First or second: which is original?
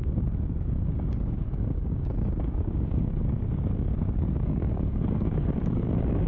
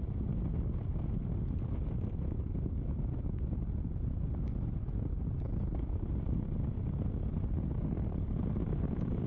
second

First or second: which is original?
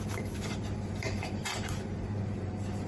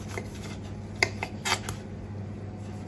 second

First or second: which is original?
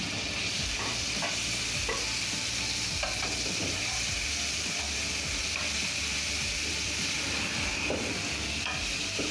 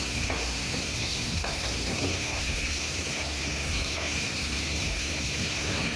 first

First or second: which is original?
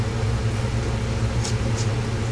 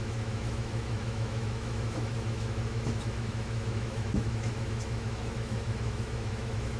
first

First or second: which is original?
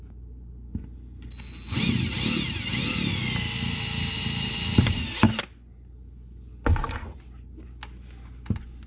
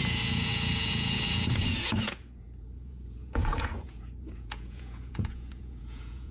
first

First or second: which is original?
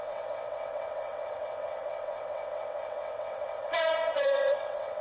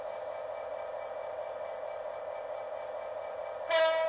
second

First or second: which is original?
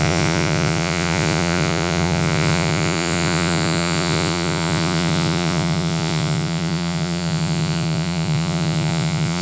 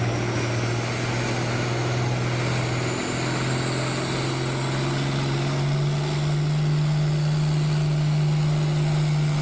second